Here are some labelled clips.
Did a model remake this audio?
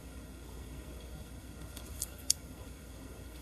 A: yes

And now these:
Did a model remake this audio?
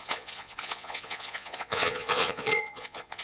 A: yes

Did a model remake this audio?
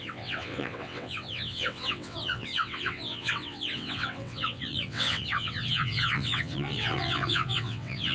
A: yes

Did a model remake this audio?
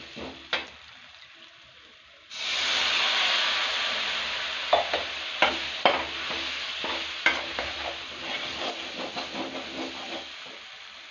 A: no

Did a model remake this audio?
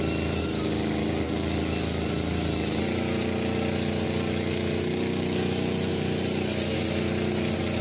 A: no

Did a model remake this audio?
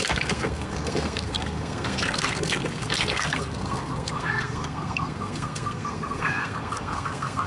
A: yes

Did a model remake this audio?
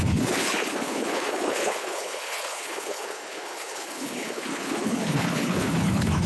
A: yes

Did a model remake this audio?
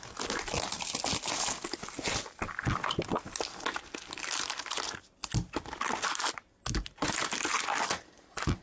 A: no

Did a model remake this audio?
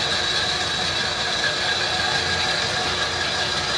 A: no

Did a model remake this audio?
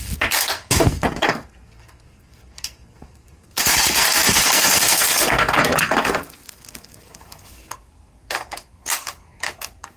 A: yes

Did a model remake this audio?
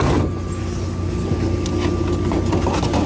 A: no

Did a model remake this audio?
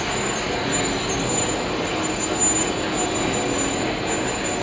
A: no